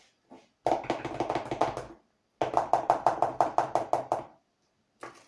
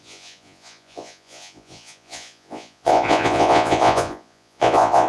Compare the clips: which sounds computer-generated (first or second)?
second